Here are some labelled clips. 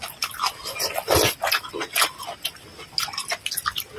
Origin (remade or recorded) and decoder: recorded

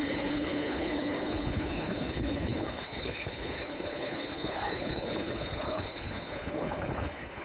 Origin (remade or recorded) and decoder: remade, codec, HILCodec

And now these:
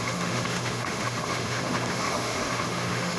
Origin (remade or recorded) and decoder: remade, autoencoder, DAC-VAE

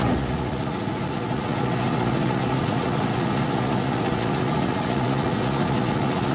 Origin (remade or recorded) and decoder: remade, vocoder, Vocos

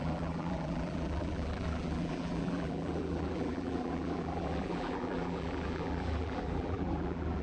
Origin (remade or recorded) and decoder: remade, vocoder, BigVGAN v2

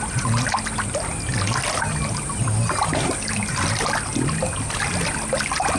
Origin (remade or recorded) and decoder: recorded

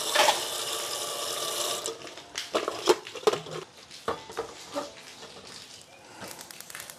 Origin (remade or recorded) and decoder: recorded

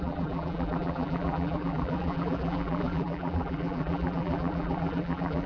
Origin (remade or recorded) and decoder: remade, vocoder, BigVGAN v2